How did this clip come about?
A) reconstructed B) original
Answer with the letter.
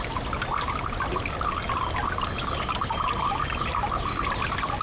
B